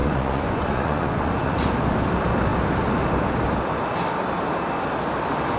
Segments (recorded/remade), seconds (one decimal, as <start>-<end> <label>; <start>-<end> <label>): 0.0-1.7 remade; 1.7-5.6 recorded